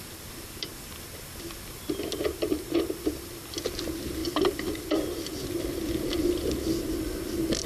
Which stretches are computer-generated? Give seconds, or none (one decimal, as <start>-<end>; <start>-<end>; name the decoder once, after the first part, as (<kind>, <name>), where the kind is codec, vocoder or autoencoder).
none